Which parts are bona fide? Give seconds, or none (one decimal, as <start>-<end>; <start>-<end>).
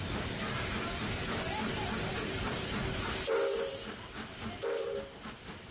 0.0-1.7; 2.6-4.4; 4.9-5.7